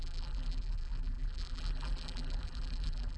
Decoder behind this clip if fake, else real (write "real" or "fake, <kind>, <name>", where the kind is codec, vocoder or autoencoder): fake, vocoder, BigVGAN v2